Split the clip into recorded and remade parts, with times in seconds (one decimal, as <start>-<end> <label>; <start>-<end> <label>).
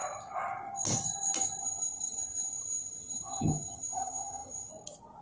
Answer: 0.0-1.6 recorded; 1.6-4.7 remade; 4.7-5.2 recorded